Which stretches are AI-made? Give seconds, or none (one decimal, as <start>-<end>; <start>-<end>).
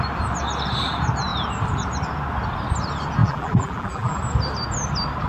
3.2-4.2